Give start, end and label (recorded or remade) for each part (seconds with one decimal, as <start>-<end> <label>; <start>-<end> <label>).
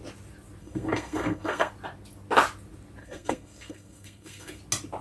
0.0-0.6 recorded; 0.6-1.7 remade; 1.7-3.0 recorded; 3.0-4.6 remade; 4.6-5.0 recorded